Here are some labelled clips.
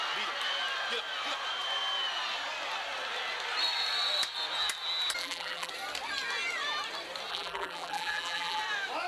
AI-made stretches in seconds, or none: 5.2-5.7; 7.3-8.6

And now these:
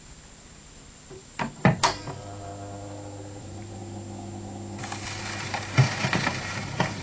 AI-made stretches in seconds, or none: 0.0-2.5; 3.4-3.8; 5.2-7.0

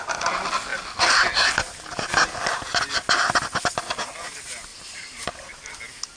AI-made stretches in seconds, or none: 4.7-5.8